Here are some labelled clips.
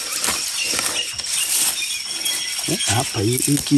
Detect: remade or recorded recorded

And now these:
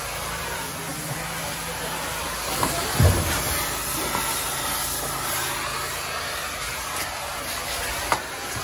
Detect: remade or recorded recorded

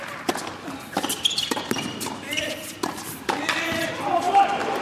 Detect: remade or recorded remade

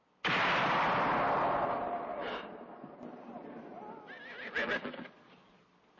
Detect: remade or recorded recorded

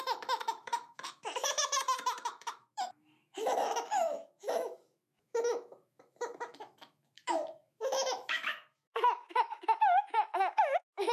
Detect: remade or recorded remade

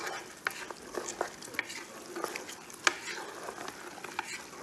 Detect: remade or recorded recorded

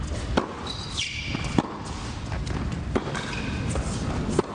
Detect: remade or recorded recorded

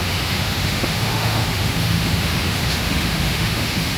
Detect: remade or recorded remade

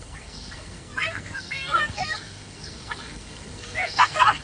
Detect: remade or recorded remade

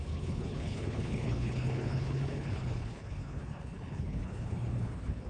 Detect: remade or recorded remade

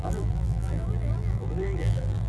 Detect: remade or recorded remade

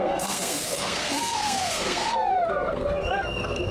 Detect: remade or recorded remade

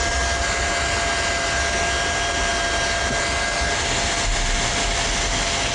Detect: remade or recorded recorded